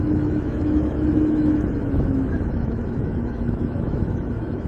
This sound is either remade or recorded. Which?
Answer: remade